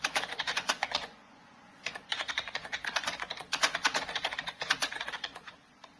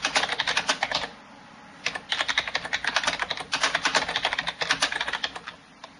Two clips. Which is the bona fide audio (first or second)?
second